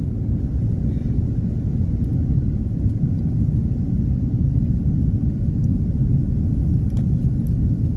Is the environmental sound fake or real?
real